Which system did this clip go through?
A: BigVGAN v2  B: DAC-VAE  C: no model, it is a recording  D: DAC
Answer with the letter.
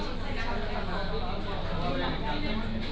C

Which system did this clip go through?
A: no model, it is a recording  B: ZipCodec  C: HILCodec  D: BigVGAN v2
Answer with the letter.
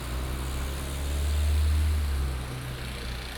A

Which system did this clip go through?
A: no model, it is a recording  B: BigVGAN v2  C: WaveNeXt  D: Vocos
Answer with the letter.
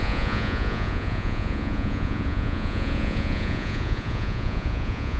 D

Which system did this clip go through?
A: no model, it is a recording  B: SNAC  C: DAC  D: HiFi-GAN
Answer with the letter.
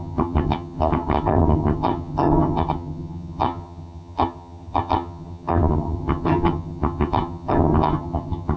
D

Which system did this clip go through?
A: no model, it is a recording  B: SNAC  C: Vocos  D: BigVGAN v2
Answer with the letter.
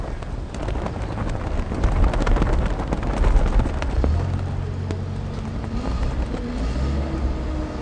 A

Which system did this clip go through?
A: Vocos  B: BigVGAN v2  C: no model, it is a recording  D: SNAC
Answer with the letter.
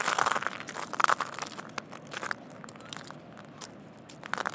C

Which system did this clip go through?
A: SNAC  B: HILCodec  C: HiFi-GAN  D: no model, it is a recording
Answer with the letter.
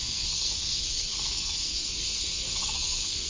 A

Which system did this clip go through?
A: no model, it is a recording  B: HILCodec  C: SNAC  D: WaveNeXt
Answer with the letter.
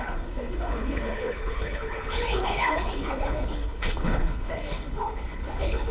B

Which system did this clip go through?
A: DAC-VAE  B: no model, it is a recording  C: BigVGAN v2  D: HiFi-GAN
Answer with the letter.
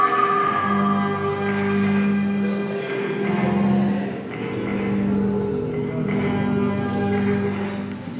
B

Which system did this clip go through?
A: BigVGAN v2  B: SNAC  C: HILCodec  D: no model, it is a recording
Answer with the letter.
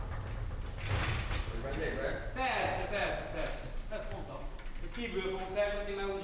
D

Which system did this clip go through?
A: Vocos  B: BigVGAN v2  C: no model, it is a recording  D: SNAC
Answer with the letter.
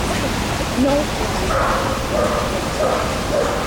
C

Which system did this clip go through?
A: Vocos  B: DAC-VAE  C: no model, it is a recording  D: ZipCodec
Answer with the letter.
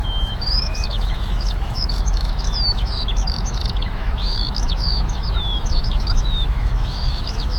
B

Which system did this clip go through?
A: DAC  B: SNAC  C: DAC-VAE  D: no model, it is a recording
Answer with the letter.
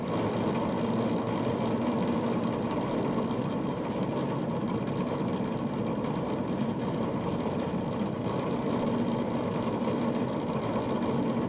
D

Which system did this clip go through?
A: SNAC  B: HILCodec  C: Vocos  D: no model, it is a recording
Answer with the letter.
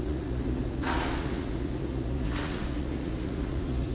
C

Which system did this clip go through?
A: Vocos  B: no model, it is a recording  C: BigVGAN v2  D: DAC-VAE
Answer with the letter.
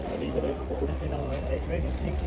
A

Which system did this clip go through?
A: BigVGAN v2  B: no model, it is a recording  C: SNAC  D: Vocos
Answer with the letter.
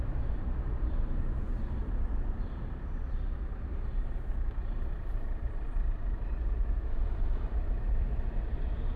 A